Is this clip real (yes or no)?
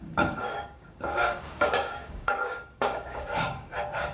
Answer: no